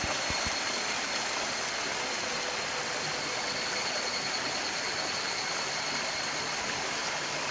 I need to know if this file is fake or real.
real